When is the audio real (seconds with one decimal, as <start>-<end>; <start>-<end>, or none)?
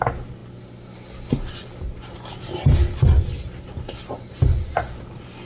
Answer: 0.0-5.5